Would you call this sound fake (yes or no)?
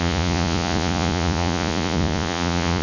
yes